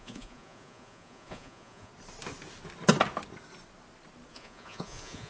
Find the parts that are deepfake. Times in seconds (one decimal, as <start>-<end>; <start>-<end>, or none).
0.0-1.9; 4.3-5.3